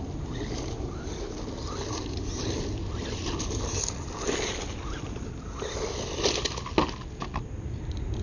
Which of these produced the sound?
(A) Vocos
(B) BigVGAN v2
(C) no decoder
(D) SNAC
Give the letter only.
C